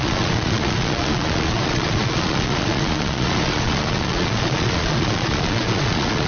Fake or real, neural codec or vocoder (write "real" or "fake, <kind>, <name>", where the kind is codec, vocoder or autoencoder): fake, vocoder, Vocos